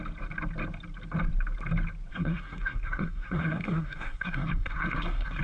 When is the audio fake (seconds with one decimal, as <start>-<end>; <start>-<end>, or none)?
2.1-5.4